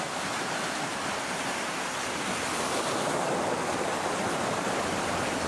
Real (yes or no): yes